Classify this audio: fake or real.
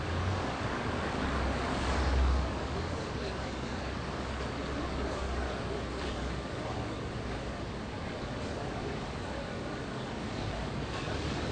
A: fake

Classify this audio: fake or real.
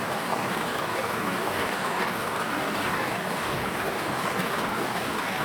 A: fake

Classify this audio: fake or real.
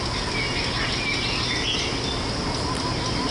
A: real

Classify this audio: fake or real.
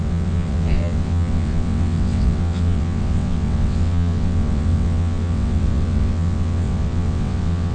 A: fake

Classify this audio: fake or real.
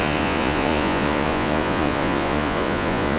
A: fake